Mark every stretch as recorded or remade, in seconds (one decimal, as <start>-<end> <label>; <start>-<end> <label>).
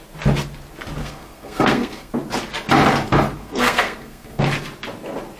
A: 0.0-1.0 recorded; 1.0-2.1 remade; 2.1-3.4 recorded; 3.4-4.4 remade; 4.4-5.4 recorded